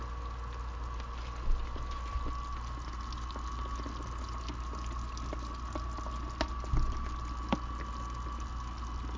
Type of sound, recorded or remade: recorded